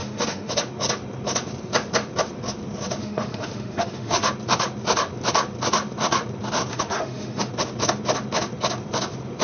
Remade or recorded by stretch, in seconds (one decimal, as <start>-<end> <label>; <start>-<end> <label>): 0.0-0.5 remade; 0.5-3.0 recorded; 3.0-4.3 remade; 4.3-6.7 recorded; 6.7-7.5 remade; 7.5-9.4 recorded